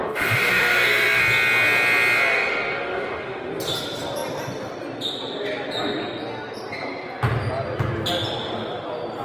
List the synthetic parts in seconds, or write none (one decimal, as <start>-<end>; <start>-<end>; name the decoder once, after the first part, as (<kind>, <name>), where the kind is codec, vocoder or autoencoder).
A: 0.0-1.2 (autoencoder, DAC-VAE); 2.3-3.5